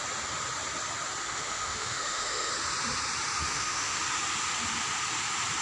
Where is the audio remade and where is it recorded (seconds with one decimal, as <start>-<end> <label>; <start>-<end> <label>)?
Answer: 0.0-1.2 recorded; 1.2-2.5 remade; 2.5-3.4 recorded; 3.4-4.0 remade; 4.0-5.6 recorded